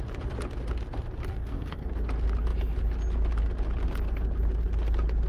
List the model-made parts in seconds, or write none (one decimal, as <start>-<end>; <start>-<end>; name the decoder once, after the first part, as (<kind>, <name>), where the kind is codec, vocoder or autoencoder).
1.3-1.9 (codec, SNAC)